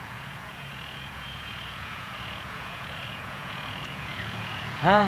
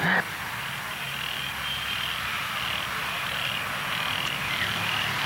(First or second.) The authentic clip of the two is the second